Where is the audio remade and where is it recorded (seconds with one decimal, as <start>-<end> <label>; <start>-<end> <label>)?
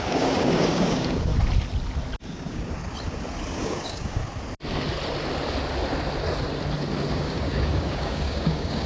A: 0.0-1.3 remade; 1.3-2.3 recorded; 2.3-2.8 remade; 2.8-3.6 recorded; 3.6-4.2 remade; 4.2-7.1 recorded; 7.1-8.9 remade